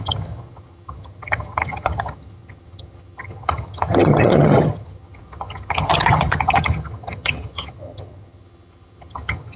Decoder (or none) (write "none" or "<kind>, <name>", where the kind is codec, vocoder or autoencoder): vocoder, HiFi-GAN